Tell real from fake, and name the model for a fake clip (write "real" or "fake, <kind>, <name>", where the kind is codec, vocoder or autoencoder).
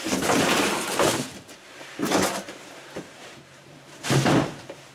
fake, vocoder, BigVGAN v2